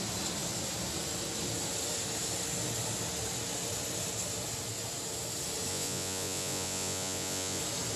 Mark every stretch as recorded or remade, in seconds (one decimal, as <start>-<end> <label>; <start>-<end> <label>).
0.0-5.7 recorded; 5.7-7.6 remade; 7.6-8.0 recorded